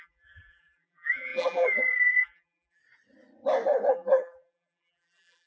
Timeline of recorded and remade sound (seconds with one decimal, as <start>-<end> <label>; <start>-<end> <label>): 0.0-2.8 remade; 2.8-3.9 recorded; 3.9-5.5 remade